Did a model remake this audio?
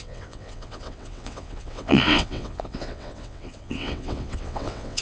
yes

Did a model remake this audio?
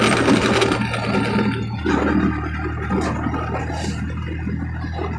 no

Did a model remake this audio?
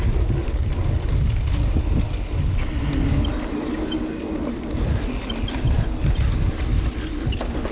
no